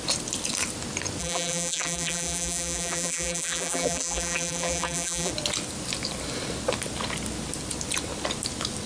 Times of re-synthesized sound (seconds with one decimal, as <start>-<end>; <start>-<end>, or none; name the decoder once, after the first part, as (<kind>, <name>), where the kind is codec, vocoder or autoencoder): 1.2-5.3 (vocoder, BigVGAN v2)